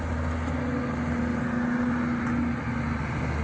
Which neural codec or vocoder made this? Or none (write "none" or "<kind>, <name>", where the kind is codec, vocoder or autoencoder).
none